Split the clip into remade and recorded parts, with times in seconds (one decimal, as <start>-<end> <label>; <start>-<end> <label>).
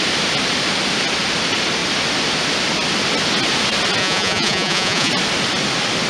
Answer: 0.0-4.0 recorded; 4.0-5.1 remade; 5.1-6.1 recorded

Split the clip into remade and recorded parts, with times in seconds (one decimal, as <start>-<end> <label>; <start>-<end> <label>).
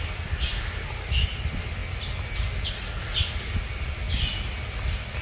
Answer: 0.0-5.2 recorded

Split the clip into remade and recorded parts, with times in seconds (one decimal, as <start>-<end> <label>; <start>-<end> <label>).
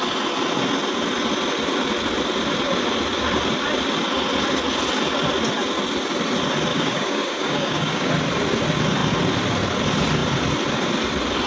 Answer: 0.0-6.7 recorded; 6.7-8.1 remade; 8.1-11.5 recorded